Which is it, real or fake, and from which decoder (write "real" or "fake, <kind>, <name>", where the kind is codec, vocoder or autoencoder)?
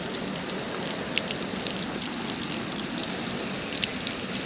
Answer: real